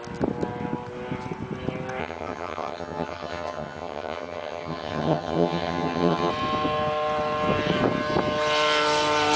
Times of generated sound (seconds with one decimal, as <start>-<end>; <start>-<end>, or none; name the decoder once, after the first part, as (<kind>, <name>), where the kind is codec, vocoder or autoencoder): 2.0-6.3 (vocoder, HiFi-GAN)